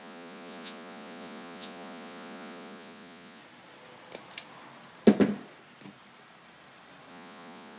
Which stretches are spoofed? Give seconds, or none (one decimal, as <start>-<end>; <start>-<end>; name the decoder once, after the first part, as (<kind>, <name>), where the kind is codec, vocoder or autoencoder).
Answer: 0.0-3.4 (vocoder, Vocos); 7.1-7.8